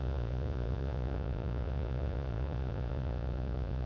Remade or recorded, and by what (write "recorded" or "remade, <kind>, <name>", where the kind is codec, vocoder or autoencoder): remade, vocoder, Vocos